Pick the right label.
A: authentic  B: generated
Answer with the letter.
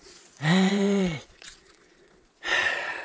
B